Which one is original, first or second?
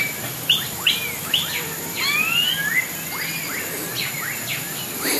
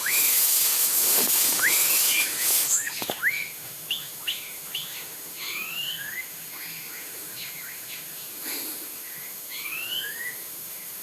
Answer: first